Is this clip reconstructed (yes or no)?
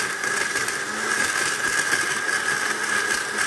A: no